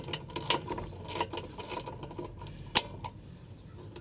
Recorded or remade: recorded